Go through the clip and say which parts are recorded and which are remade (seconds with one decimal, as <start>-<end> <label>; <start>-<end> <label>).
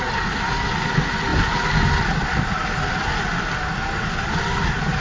0.0-5.0 recorded